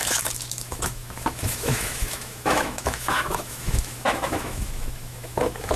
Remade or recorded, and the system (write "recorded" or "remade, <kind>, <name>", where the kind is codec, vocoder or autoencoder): remade, autoencoder, DAC-VAE